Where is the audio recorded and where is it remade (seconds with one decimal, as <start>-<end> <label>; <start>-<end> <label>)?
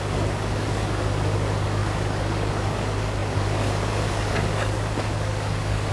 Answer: 0.0-5.9 remade